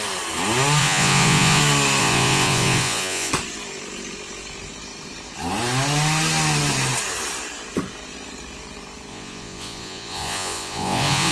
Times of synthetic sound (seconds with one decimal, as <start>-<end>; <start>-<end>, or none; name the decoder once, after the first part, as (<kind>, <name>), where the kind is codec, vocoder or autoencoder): 0.8-1.6 (vocoder, Vocos); 2.0-3.3; 9.1-11.3